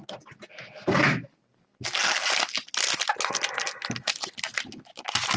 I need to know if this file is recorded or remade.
recorded